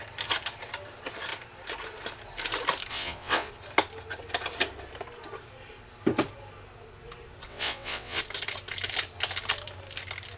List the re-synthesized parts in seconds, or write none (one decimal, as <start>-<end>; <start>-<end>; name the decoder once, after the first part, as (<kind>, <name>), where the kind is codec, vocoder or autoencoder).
2.9-3.5 (vocoder, WaveNeXt); 7.5-8.2